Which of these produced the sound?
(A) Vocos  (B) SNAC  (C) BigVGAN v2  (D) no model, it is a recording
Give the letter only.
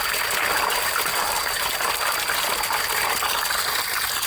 D